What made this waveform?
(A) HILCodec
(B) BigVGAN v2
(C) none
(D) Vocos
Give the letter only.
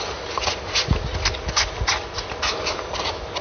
C